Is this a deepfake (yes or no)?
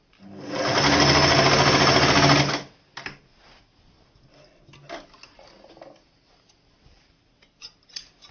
no